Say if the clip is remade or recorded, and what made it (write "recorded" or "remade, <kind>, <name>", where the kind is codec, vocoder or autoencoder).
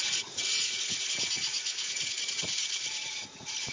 remade, vocoder, Vocos